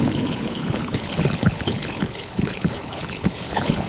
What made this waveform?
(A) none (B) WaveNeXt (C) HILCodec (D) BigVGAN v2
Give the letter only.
C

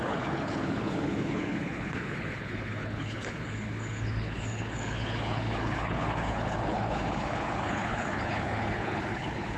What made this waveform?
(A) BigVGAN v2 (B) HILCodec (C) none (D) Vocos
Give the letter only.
B